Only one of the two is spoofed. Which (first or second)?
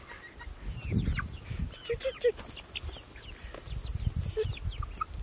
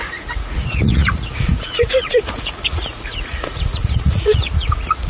second